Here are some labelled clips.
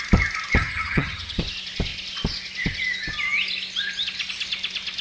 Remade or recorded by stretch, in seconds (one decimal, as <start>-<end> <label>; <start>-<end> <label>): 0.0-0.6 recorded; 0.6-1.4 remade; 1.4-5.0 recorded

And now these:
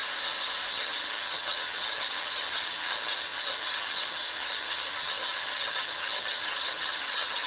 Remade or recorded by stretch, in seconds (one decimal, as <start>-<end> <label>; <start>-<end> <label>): 0.0-0.7 recorded; 0.7-7.5 remade

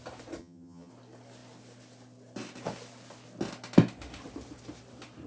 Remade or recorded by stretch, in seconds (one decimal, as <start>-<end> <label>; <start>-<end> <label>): 0.0-0.4 recorded; 0.4-0.9 remade; 0.9-5.3 recorded

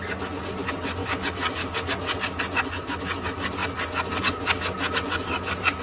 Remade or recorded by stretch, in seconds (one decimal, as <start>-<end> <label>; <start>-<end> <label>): 0.0-5.8 recorded

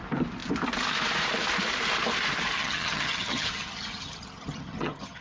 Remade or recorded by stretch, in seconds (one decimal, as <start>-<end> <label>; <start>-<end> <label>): 0.0-2.6 recorded; 2.6-5.2 remade